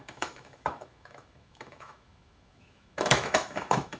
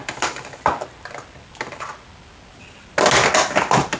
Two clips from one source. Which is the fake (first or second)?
first